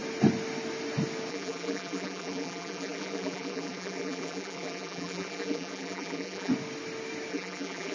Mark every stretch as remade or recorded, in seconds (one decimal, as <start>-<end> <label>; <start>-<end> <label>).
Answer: 0.0-1.3 recorded; 1.3-6.5 remade; 6.5-7.3 recorded; 7.3-7.9 remade